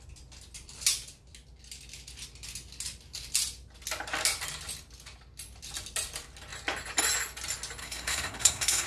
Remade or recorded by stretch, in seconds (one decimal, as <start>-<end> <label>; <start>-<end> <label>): 0.0-7.8 recorded; 7.8-8.9 remade